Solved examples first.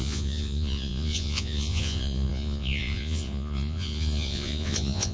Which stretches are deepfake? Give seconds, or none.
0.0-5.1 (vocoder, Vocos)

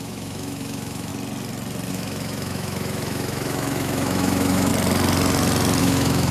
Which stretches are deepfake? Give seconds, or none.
0.0-1.1 (autoencoder, DAC-VAE); 1.9-4.7; 5.8-6.3

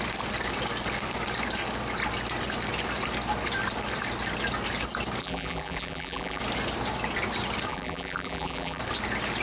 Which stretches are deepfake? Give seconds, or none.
5.2-6.4 (vocoder, BigVGAN v2); 7.7-8.8

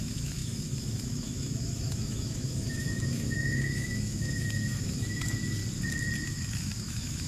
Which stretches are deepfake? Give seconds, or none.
0.0-5.6 (autoencoder, DAC-VAE); 6.2-7.3